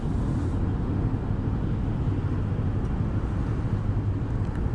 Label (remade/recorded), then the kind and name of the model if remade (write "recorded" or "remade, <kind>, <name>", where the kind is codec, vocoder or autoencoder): recorded